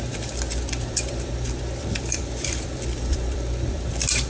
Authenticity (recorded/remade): remade